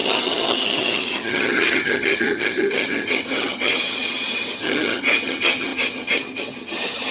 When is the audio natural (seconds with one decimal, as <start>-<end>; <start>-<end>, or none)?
none